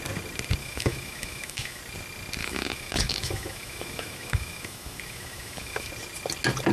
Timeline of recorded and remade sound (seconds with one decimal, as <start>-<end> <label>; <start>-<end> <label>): 0.0-0.6 recorded; 0.6-1.8 remade; 1.8-2.4 recorded; 2.4-5.9 remade; 5.9-6.7 recorded